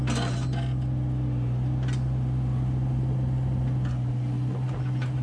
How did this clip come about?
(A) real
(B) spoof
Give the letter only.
A